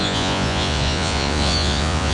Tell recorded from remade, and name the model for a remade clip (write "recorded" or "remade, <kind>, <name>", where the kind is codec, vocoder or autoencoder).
remade, vocoder, Vocos